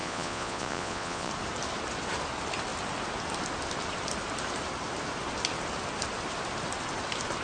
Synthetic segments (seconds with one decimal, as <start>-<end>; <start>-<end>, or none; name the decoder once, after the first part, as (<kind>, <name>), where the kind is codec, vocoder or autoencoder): 0.0-1.3 (vocoder, Vocos)